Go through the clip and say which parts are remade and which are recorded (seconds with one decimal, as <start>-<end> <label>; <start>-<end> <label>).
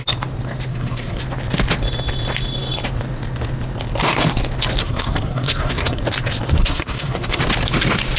0.0-0.7 recorded; 0.7-1.2 remade; 1.2-4.8 recorded; 4.8-6.0 remade; 6.0-6.6 recorded; 6.6-7.4 remade; 7.4-8.2 recorded